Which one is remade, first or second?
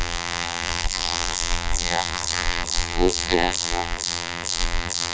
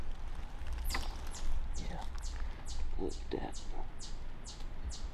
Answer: first